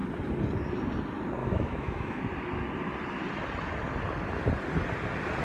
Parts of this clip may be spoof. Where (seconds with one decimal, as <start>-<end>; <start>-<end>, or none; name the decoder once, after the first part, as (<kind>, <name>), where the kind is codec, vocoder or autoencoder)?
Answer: 1.4-2.2 (autoencoder, DAC-VAE)